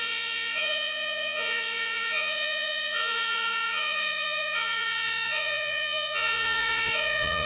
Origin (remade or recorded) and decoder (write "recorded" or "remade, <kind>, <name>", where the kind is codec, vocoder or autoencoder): remade, vocoder, Vocos